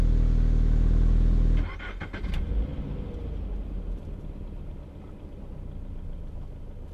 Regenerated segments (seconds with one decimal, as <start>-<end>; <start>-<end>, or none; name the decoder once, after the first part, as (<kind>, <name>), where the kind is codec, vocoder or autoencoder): none